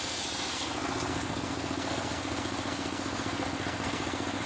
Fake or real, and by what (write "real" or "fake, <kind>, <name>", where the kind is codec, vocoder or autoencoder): fake, codec, SNAC